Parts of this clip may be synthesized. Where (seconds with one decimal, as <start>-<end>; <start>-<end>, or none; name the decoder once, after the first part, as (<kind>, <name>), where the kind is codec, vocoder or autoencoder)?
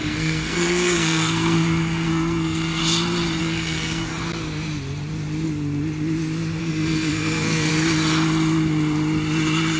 0.0-2.8 (codec, SNAC); 3.4-4.1; 6.6-7.7